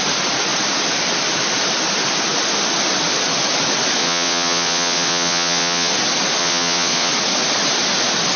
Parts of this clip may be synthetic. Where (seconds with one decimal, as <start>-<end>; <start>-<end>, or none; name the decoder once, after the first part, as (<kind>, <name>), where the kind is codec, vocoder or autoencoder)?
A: 4.0-5.9 (vocoder, WaveNeXt); 6.4-7.1